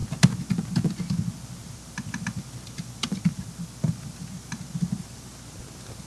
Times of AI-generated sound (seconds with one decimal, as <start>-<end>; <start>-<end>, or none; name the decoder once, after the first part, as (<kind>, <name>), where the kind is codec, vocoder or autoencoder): 1.6-4.6 (vocoder, BigVGAN v2)